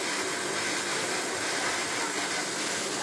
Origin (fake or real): real